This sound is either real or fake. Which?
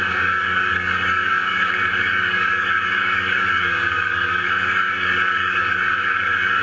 fake